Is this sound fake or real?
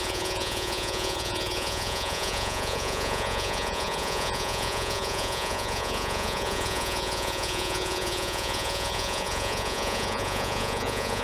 fake